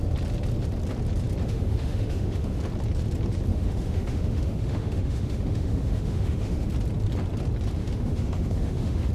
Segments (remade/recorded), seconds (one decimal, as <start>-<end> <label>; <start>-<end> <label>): 0.0-1.4 recorded; 1.4-2.6 remade; 2.6-3.5 recorded; 3.5-6.7 remade; 6.7-7.8 recorded; 7.8-9.1 remade